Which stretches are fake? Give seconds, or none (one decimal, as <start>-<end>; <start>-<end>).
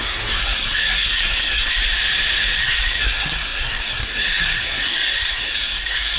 0.0-1.8; 2.6-6.2